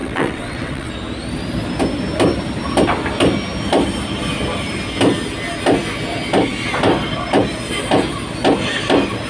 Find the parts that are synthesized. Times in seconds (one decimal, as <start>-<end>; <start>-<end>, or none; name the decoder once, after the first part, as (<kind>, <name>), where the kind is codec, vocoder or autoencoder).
0.0-0.9 (vocoder, WaveNeXt)